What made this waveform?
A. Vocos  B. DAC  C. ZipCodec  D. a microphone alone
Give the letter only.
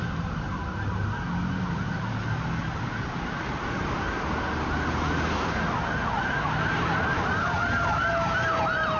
D